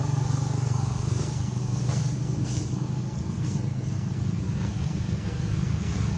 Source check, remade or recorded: remade